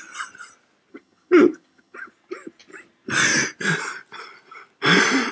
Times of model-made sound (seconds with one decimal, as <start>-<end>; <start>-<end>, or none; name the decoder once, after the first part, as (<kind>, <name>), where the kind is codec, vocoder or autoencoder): 0.9-2.1 (vocoder, HiFi-GAN)